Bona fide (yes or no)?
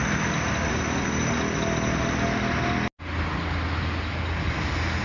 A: yes